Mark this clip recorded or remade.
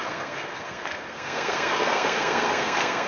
remade